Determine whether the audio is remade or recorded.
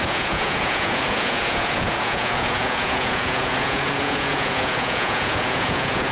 remade